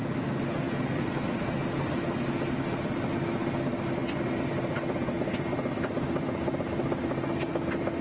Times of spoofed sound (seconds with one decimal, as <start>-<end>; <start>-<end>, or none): none